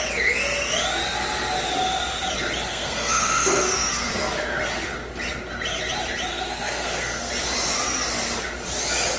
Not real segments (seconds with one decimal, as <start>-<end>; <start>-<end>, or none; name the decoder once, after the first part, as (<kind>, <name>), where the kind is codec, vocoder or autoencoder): 2.7-4.1 (codec, SNAC); 6.3-7.3